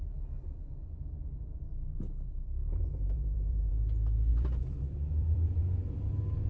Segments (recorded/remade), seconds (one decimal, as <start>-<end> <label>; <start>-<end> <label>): 0.0-0.8 recorded; 0.8-3.7 remade; 3.7-4.3 recorded; 4.3-5.6 remade; 5.6-6.5 recorded